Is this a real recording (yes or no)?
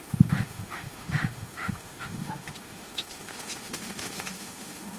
no